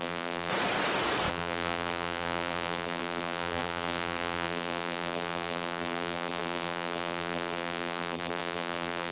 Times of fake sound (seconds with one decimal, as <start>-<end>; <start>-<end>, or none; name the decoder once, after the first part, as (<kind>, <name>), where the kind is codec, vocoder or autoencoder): 0.0-0.5 (vocoder, BigVGAN v2); 1.3-9.1